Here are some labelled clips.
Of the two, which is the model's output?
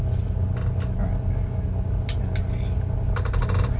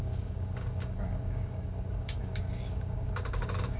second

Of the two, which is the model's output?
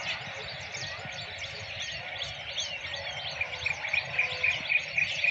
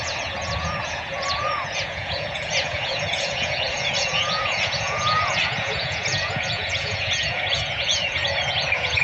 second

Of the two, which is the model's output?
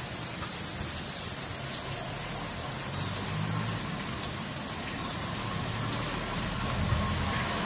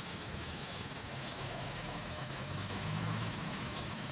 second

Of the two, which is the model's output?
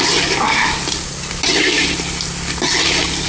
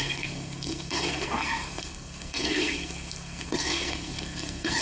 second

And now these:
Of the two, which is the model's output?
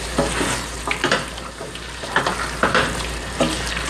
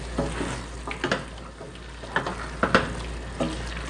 first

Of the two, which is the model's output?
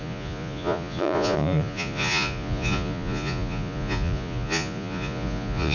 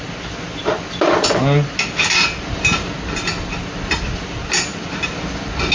first